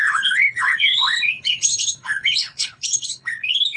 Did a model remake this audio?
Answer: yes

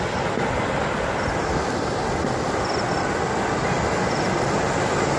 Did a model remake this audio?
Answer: no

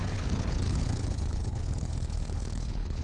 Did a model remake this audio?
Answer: yes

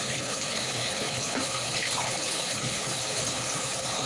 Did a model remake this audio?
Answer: yes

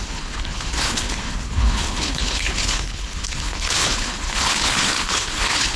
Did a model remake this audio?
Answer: yes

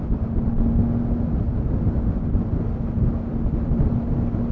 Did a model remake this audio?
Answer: no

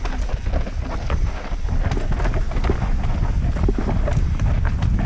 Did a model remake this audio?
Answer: no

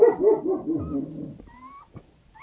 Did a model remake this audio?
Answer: no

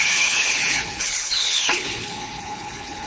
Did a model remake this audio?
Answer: yes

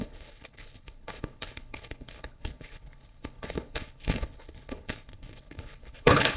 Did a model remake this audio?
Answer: yes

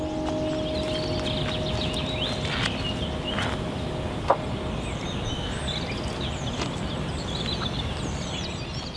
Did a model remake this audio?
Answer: no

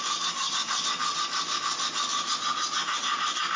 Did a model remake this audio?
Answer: no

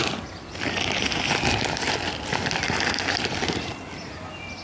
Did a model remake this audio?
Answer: no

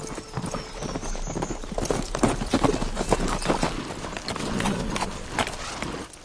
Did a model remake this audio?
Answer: no